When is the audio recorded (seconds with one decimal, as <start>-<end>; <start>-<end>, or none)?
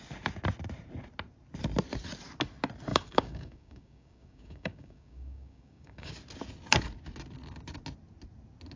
0.0-2.9; 6.1-8.8